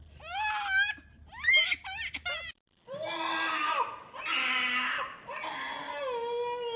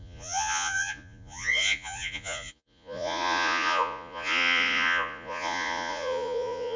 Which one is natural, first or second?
first